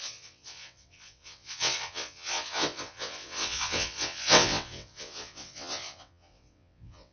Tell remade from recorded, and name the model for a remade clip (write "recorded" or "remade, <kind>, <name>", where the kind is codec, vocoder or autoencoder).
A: remade, vocoder, WaveNeXt